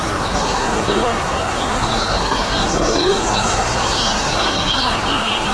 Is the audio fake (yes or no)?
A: yes